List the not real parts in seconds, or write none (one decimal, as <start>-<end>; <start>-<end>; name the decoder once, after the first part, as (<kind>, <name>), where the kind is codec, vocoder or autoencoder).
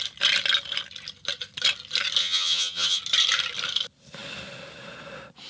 2.2-3.0 (vocoder, HiFi-GAN)